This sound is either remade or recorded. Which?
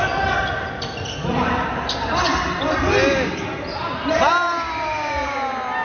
recorded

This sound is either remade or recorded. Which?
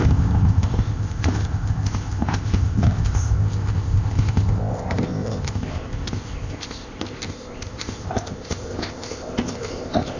remade